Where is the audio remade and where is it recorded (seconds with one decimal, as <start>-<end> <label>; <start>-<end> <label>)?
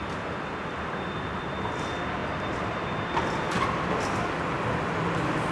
0.0-5.5 recorded